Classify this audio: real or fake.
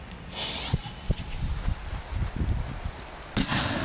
real